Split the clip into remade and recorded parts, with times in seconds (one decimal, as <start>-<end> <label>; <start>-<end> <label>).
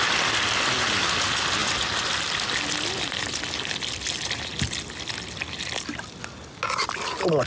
0.0-7.5 recorded